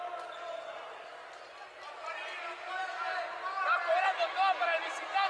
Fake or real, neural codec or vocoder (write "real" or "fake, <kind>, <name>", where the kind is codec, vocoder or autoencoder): real